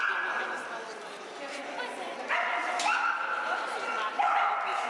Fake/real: fake